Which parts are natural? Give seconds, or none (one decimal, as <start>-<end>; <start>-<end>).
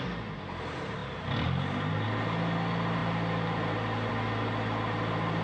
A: 0.0-5.4